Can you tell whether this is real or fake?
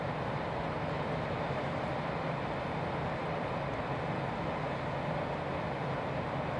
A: real